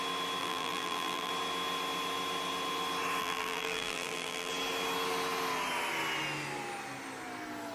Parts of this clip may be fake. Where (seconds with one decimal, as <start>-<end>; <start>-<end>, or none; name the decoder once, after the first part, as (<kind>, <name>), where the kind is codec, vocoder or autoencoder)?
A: 0.4-1.3 (vocoder, BigVGAN v2); 3.2-4.5